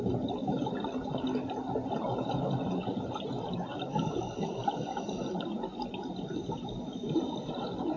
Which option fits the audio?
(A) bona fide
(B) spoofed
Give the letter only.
A